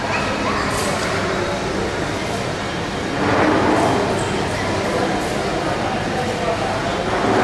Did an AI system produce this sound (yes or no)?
no